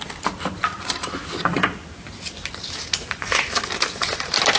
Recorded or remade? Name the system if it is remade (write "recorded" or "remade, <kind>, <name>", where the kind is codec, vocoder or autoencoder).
recorded